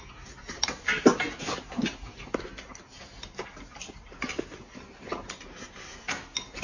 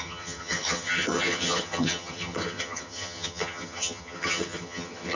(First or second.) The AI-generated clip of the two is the second